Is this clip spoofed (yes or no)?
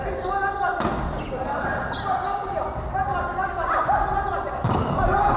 no